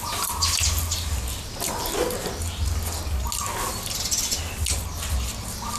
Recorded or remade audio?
recorded